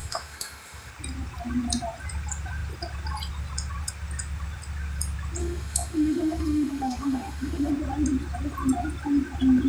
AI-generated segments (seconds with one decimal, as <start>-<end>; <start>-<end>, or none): 0.0-0.9; 5.4-7.7